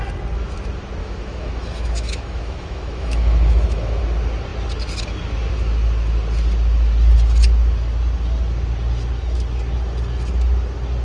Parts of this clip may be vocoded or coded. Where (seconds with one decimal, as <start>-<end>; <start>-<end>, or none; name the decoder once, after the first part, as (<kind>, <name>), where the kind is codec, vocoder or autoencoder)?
1.0-4.0 (autoencoder, DAC-VAE)